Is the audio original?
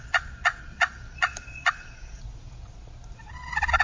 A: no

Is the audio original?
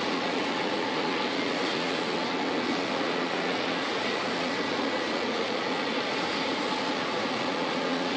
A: no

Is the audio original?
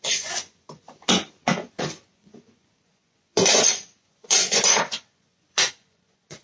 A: no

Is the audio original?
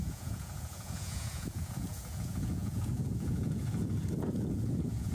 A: no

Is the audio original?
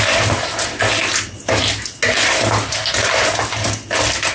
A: yes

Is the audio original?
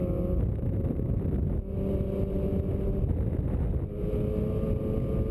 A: yes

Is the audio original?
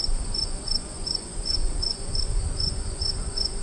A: no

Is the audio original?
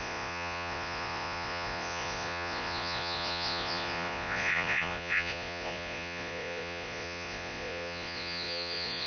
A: no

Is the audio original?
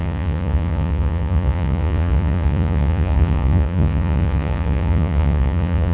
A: no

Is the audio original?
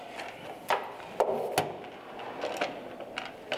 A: yes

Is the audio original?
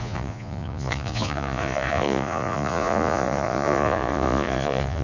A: no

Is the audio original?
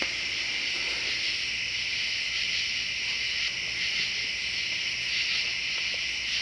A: yes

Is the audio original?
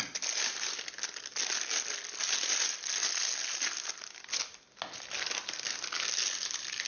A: yes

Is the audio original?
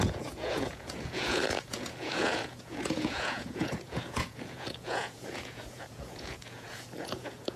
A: no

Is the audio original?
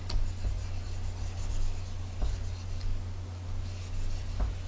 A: yes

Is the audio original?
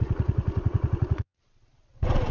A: no